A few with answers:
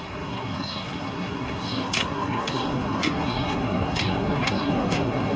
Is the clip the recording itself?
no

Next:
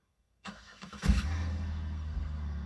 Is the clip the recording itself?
no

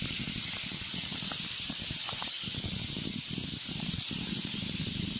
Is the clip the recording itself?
no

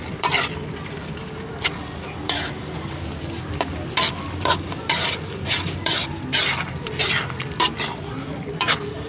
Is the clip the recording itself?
no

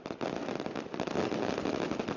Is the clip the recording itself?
no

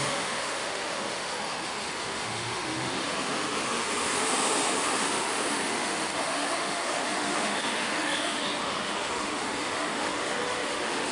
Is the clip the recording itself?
no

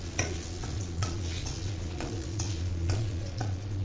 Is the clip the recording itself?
no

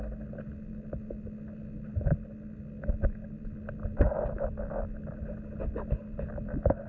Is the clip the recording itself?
yes